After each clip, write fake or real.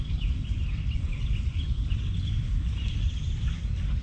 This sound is fake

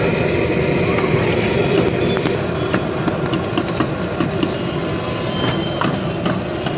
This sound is real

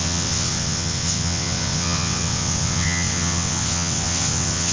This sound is fake